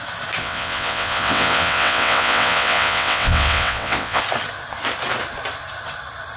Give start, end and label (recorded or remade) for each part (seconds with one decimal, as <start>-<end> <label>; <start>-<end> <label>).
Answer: 0.0-0.4 recorded; 0.4-4.2 remade; 4.2-6.4 recorded